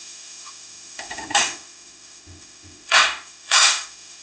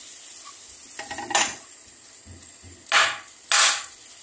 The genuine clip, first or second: second